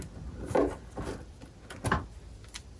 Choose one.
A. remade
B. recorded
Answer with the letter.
B